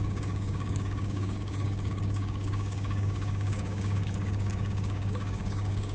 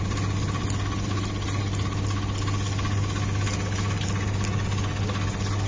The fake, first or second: first